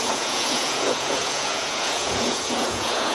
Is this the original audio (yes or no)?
no